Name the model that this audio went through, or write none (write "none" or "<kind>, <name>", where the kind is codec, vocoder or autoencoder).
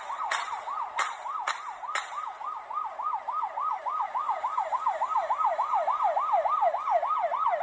none